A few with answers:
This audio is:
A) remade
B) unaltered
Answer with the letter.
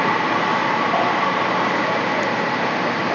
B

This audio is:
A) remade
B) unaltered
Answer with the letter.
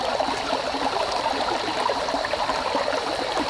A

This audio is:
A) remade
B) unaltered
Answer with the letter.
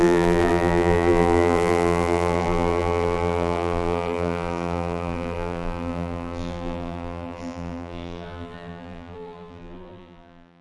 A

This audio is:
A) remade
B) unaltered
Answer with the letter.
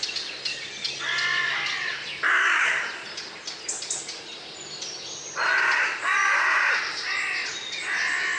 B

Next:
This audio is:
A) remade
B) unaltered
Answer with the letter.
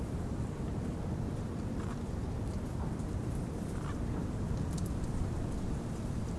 B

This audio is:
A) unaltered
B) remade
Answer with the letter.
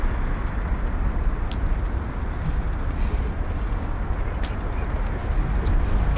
A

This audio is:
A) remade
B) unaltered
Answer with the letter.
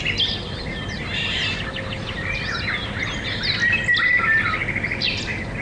B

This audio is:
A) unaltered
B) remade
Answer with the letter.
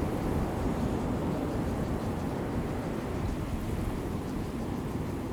B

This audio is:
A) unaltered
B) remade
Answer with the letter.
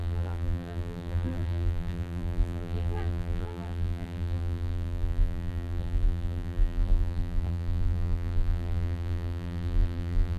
B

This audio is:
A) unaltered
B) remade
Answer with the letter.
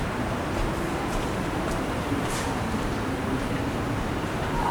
B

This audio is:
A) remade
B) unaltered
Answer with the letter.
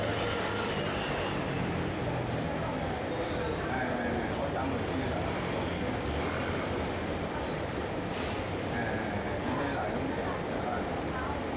B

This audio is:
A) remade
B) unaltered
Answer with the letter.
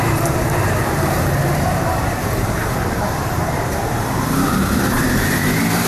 A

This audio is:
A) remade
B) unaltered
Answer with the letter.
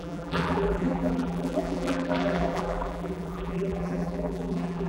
A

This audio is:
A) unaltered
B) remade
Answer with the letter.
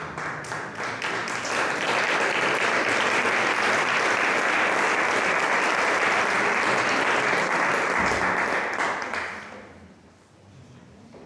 A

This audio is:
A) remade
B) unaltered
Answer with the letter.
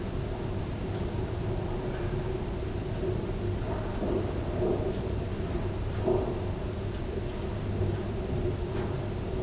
B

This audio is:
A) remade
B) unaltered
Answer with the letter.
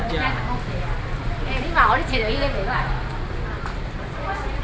B